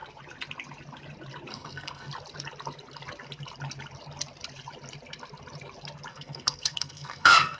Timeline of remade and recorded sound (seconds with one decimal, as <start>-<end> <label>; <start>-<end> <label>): 0.0-1.5 recorded; 1.5-2.1 remade; 2.1-6.1 recorded; 6.1-7.6 remade